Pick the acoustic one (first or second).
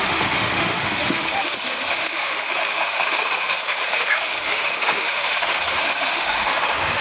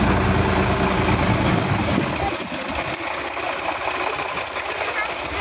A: second